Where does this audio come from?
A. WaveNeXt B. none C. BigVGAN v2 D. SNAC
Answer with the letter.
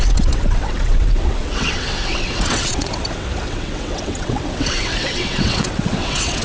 A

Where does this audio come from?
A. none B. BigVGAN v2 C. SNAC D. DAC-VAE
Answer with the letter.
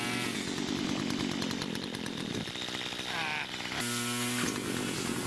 A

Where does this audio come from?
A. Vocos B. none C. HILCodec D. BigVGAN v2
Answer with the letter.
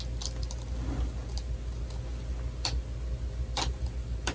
B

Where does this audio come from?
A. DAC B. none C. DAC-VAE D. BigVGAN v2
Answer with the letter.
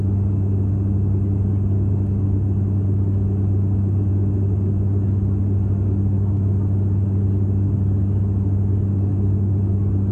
B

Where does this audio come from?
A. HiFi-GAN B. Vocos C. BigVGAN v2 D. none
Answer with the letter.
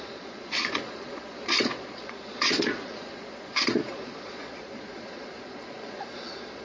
B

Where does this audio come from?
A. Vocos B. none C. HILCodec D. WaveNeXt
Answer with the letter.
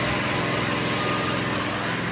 B